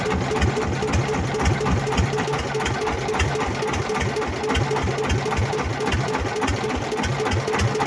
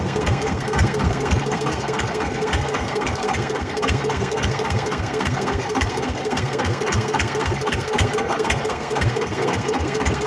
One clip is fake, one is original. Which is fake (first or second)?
second